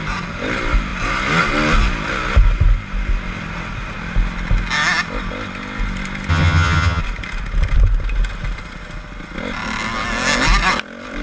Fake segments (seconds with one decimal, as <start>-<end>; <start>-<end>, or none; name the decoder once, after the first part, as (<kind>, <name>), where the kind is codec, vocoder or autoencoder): 6.3-7.0 (vocoder, HiFi-GAN)